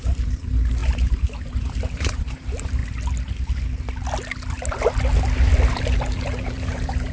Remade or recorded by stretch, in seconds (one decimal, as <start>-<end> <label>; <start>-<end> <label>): 0.0-2.8 remade; 2.8-5.7 recorded; 5.7-7.1 remade